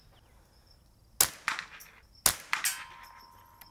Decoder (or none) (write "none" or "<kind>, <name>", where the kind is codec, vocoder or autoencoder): none